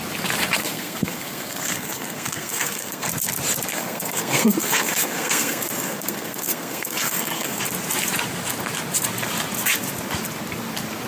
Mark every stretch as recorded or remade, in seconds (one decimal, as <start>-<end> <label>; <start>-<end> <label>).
0.0-0.6 recorded; 0.6-3.1 remade; 3.1-3.7 recorded; 3.7-7.6 remade; 7.6-11.1 recorded

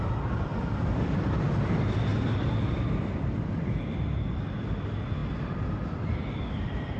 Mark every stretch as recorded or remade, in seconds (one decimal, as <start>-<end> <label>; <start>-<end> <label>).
0.0-7.0 remade

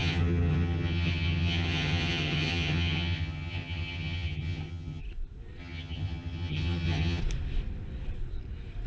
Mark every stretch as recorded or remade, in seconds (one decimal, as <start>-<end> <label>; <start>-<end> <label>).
0.0-5.0 remade; 5.0-5.6 recorded; 5.6-7.2 remade; 7.2-8.9 recorded

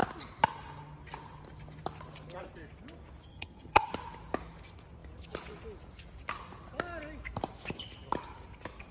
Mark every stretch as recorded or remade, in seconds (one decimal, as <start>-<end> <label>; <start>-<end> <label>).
0.0-3.3 recorded; 3.3-3.9 remade; 3.9-8.9 recorded

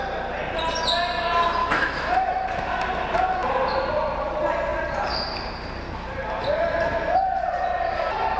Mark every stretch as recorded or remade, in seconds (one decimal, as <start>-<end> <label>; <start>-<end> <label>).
0.0-1.6 recorded; 1.6-2.6 remade; 2.6-8.4 recorded

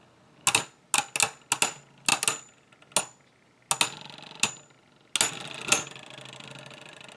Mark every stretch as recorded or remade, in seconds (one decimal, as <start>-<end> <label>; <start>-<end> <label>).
0.0-7.2 recorded

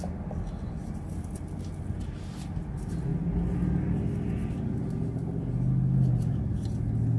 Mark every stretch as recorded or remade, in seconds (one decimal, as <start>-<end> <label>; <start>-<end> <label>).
0.0-7.2 recorded